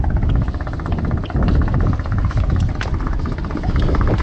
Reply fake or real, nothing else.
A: real